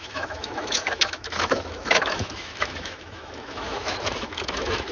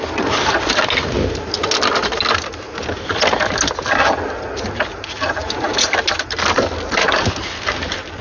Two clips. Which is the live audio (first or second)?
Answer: second